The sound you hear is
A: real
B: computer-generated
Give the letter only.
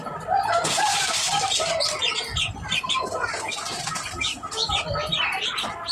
B